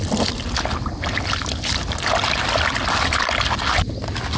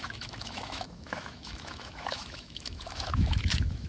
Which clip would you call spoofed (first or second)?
second